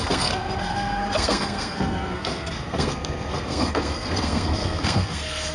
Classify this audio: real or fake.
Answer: fake